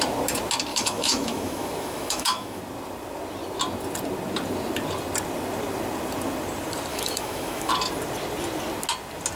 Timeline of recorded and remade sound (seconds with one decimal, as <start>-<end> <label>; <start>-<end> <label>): 0.0-0.7 recorded; 0.7-2.6 remade; 2.6-6.9 recorded; 6.9-7.7 remade; 7.7-9.4 recorded